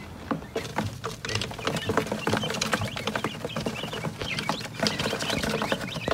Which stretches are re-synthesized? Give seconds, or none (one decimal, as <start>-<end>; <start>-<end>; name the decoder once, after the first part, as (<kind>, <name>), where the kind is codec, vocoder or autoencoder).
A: none